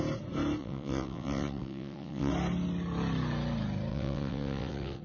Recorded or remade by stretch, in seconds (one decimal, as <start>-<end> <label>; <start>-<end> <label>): 0.0-0.6 recorded; 0.6-2.3 remade; 2.3-3.9 recorded; 3.9-5.0 remade